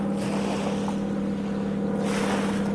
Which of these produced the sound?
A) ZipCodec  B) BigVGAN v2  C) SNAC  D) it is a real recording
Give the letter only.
D